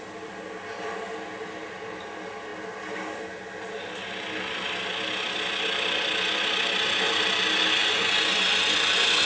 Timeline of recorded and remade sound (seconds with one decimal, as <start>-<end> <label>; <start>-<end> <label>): 0.0-7.8 recorded; 7.8-9.2 remade